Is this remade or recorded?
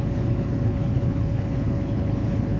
remade